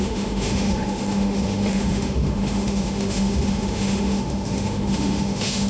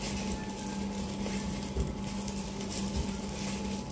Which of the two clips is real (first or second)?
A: second